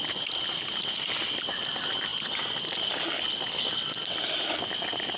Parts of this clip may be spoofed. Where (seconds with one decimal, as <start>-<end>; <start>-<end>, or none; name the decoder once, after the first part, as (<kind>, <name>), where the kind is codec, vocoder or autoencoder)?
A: none